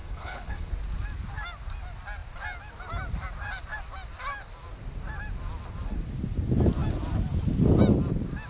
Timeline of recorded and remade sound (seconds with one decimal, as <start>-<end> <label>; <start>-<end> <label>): 0.0-0.7 remade; 0.7-8.5 recorded